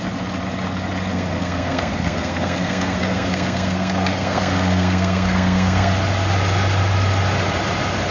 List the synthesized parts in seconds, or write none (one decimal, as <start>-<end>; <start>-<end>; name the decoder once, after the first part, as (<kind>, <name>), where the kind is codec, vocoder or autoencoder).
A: 1.1-5.9 (codec, SNAC)